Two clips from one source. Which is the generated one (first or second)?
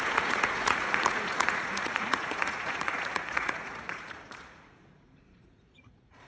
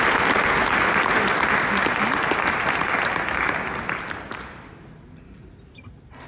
first